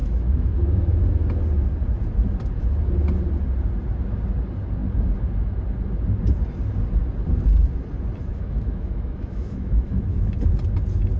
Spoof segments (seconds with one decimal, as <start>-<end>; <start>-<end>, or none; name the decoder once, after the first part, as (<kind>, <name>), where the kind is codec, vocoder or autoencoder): 0.0-1.0 (autoencoder, DAC-VAE); 8.3-10.3